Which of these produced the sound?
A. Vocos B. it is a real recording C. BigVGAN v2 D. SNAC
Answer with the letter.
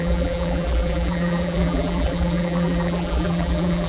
C